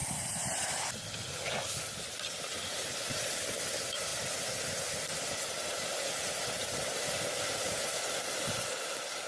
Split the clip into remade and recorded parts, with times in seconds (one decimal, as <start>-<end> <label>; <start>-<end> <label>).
0.0-9.3 recorded